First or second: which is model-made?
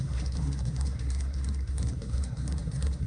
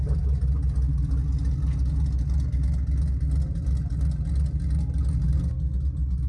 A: first